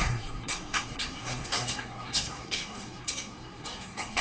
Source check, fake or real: fake